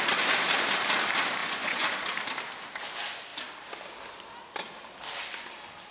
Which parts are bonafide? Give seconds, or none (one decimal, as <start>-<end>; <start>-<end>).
0.0-1.4; 1.9-5.9